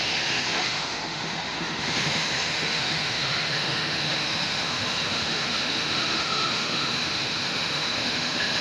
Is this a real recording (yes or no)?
no